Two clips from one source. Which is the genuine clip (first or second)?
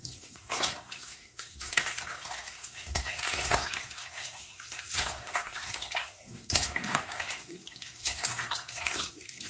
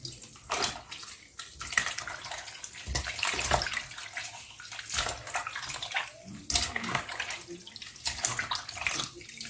second